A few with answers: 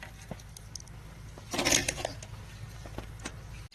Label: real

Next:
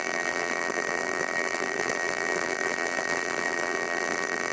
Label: fake